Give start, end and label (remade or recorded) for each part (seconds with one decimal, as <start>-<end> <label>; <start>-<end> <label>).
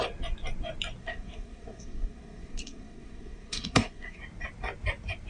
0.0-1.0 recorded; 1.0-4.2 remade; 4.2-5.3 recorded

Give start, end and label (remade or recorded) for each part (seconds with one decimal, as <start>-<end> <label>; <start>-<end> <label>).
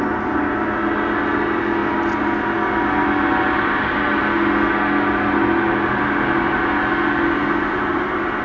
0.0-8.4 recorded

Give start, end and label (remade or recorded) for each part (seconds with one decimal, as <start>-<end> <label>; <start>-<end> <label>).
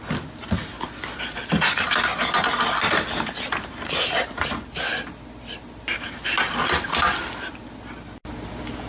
0.0-8.9 recorded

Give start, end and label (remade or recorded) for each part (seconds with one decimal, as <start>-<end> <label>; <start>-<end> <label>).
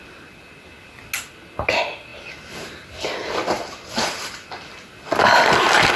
0.0-6.0 recorded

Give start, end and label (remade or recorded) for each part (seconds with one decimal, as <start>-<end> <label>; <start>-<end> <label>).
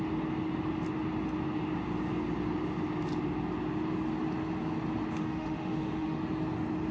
0.0-5.2 recorded; 5.2-6.2 remade; 6.2-6.9 recorded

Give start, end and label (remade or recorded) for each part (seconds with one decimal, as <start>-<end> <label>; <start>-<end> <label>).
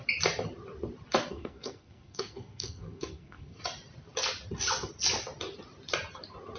0.0-1.3 recorded; 1.3-3.6 remade; 3.6-6.6 recorded